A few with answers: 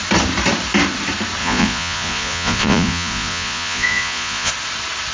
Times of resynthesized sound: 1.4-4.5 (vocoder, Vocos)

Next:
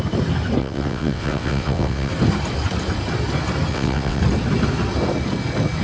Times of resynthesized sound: 0.6-2.1 (vocoder, WaveNeXt); 3.7-4.2